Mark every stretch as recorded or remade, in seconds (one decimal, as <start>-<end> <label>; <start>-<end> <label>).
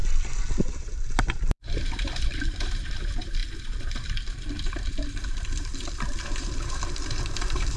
0.0-0.6 recorded; 0.6-7.8 remade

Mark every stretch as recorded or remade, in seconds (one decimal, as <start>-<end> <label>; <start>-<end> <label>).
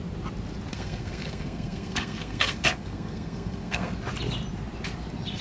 0.0-0.7 recorded; 0.7-3.9 remade; 3.9-5.4 recorded